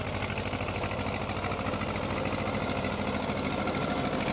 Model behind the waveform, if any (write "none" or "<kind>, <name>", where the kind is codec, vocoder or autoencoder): none